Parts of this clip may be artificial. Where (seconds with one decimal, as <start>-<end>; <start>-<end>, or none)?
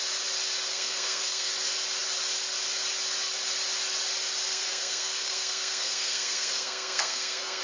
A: 0.7-1.5; 4.5-7.6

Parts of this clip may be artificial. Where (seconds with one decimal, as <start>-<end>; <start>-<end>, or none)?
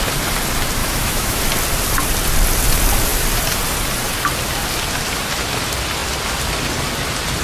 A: 0.8-1.4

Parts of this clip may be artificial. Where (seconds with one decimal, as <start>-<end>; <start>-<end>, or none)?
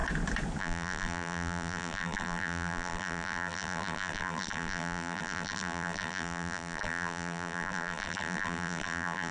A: 0.6-9.3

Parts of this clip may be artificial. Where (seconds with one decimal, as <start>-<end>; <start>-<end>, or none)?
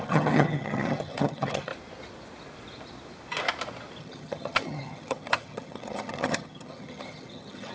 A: 0.0-1.7; 4.0-7.7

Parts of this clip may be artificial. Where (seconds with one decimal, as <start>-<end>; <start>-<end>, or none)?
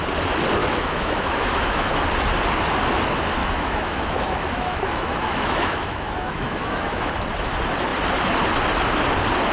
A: 0.6-1.9; 3.4-7.1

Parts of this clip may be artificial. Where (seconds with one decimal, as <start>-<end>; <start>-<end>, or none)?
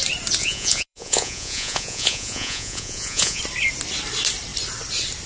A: 0.4-3.4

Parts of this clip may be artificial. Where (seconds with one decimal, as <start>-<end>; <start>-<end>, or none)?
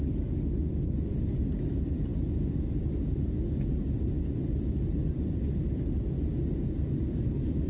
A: none